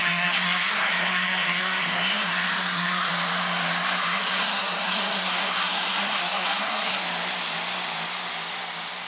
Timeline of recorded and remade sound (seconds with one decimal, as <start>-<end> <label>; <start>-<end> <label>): 0.0-3.1 remade; 3.1-4.0 recorded; 4.0-7.0 remade; 7.0-9.1 recorded